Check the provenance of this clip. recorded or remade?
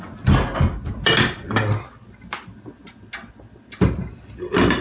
recorded